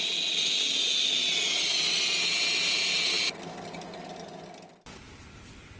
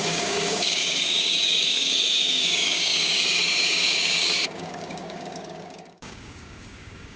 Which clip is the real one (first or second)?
first